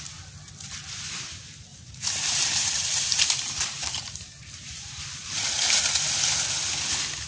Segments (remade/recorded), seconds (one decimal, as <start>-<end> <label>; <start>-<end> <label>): 0.0-1.7 recorded; 1.7-6.1 remade; 6.1-7.3 recorded